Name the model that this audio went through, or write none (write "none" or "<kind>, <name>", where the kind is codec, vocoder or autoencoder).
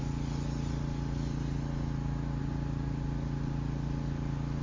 none